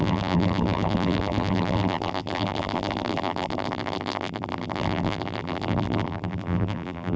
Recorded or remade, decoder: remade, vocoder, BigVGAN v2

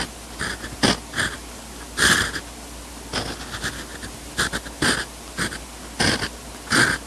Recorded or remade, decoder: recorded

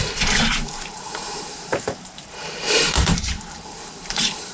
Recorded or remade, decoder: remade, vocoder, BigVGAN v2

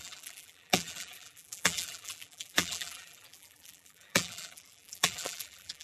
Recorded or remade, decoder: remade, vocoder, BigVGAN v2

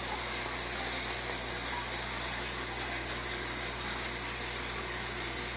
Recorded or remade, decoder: recorded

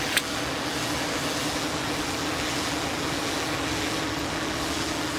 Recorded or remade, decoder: recorded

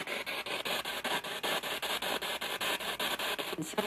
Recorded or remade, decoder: recorded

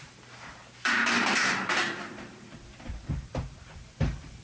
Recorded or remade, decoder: remade, vocoder, BigVGAN v2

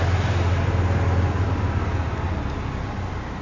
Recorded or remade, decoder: recorded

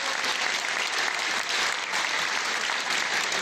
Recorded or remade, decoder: recorded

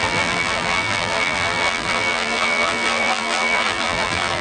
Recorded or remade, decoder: remade, vocoder, BigVGAN v2